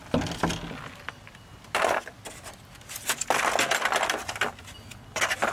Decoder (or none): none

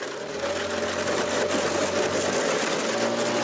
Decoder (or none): none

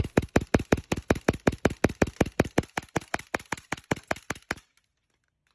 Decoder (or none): none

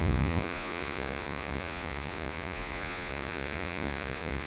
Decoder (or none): vocoder, Vocos